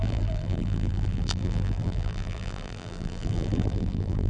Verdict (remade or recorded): remade